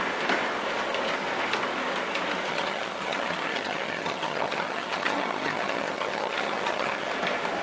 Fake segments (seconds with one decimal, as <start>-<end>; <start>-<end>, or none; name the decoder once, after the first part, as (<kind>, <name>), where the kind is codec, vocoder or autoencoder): 2.5-7.1 (vocoder, HiFi-GAN)